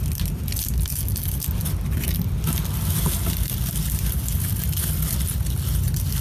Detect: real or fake real